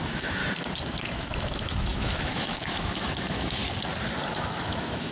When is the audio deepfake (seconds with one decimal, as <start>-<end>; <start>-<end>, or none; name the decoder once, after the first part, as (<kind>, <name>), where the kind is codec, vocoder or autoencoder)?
0.0-0.4 (autoencoder, DAC-VAE); 1.0-3.6; 4.3-5.1